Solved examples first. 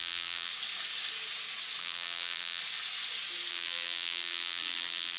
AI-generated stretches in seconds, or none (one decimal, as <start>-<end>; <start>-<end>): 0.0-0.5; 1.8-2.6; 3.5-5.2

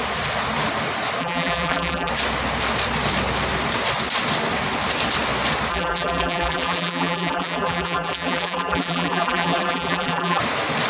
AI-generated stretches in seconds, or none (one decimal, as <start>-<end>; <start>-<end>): 1.2-2.1; 5.7-10.4

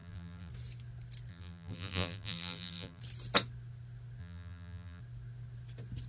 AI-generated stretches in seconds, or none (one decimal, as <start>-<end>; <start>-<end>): 0.0-0.5; 1.3-3.0; 4.2-5.0